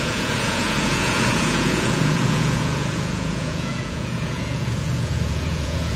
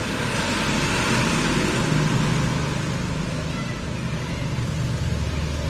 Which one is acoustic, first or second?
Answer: second